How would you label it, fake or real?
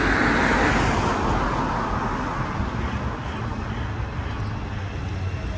real